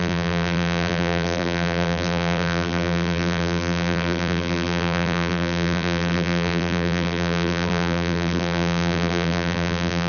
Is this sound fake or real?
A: fake